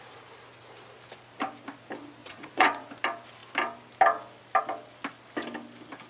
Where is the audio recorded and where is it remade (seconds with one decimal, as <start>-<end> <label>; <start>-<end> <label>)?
0.0-2.2 recorded; 2.2-2.9 remade; 2.9-6.1 recorded